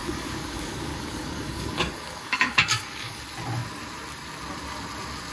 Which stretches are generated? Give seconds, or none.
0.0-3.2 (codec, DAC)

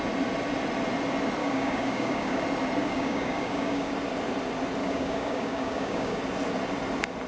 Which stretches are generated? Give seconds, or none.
1.4-2.4 (codec, DAC); 2.8-3.9; 4.8-6.2

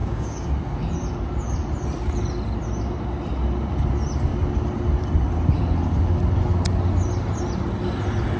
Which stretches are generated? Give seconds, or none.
0.0-0.5 (codec, DAC)

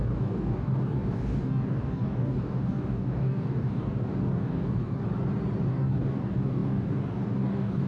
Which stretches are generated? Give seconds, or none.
0.0-5.0 (codec, DAC); 5.7-7.9

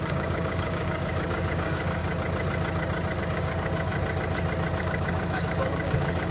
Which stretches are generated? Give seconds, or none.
0.0-2.0 (codec, DAC); 3.2-3.9; 4.8-6.3

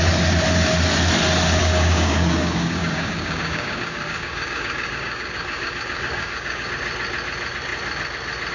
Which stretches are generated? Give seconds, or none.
1.6-6.7 (codec, DAC)